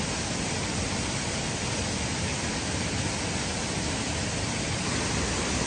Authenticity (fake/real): real